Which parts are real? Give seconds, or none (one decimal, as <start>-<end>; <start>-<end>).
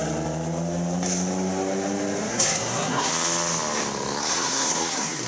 0.0-2.3; 3.1-4.2